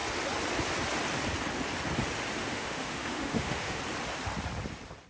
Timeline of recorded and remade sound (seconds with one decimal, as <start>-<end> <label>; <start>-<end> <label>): 0.0-2.4 recorded; 2.4-3.8 remade; 3.8-5.1 recorded